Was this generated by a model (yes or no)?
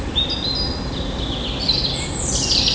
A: no